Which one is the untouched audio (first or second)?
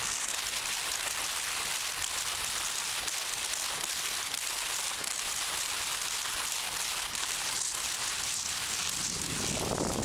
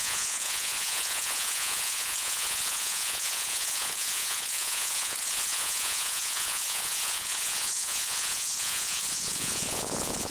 first